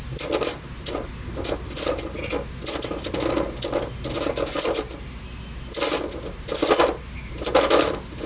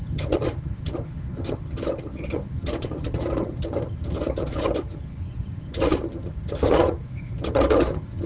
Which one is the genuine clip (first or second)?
first